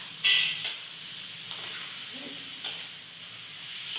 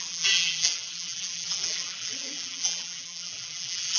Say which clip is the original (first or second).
first